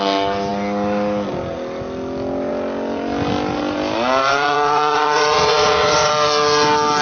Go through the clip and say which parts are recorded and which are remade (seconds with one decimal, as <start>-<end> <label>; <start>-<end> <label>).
0.0-4.2 recorded; 4.2-6.1 remade; 6.1-7.0 recorded